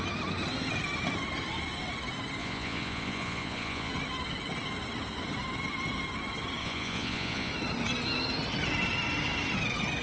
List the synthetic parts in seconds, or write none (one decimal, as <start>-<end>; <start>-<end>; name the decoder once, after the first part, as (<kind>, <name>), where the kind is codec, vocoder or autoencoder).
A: 2.4-3.9 (vocoder, Vocos); 6.6-7.5